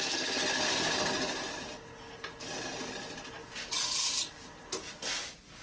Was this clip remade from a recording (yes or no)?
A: no